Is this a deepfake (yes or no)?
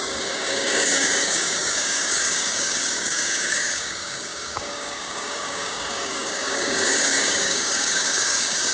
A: yes